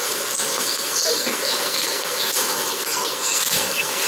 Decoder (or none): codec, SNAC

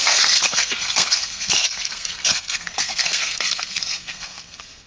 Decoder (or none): codec, SNAC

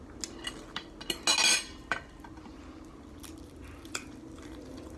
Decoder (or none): none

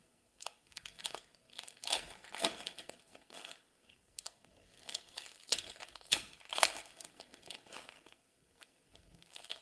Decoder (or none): codec, SNAC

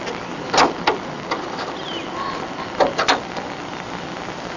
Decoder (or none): none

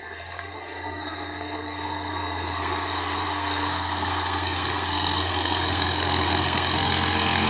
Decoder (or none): codec, SNAC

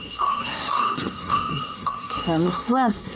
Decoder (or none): codec, SNAC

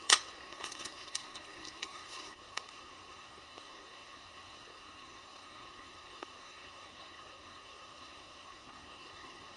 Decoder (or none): codec, SNAC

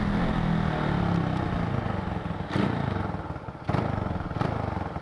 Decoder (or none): none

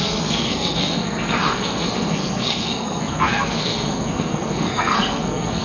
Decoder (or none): codec, SNAC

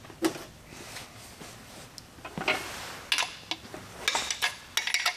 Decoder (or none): none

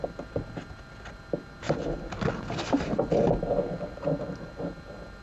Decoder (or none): none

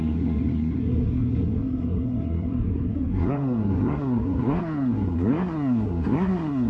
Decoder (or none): codec, SNAC